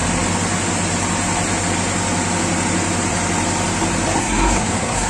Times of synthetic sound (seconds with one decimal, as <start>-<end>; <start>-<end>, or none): 4.2-5.1